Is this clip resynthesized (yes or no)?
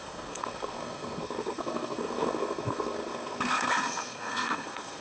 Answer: yes